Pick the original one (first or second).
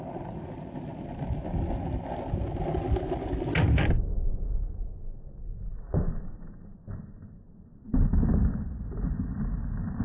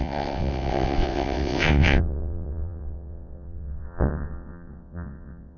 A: first